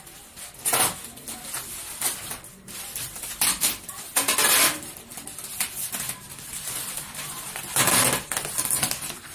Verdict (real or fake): real